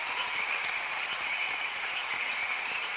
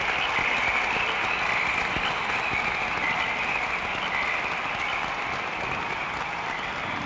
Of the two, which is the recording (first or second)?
second